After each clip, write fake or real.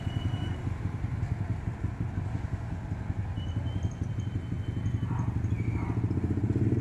real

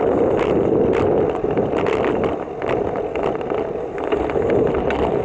real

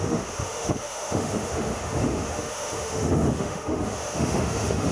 fake